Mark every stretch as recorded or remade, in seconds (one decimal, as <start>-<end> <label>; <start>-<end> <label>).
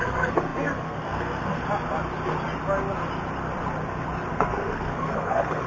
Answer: 0.0-1.6 remade; 1.6-4.3 recorded; 4.3-5.7 remade